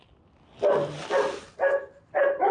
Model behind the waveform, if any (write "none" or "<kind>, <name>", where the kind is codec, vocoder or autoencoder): none